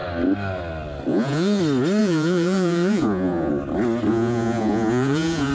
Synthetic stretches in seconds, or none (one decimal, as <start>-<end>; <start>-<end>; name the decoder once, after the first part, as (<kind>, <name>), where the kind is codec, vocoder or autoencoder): 1.1-1.6 (vocoder, Vocos); 2.0-3.5; 4.1-5.5